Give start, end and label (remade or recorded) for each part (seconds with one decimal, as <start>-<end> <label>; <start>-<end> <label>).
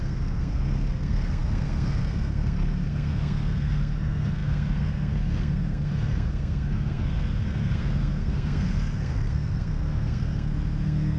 0.0-11.2 remade